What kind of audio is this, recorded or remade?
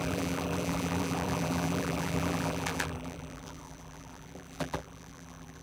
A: remade